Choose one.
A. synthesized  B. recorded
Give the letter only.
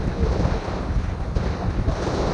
B